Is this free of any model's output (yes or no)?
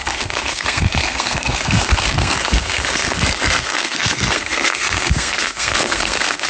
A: no